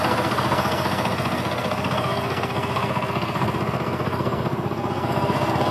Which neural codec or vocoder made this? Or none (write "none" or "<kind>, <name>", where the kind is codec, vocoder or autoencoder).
codec, SNAC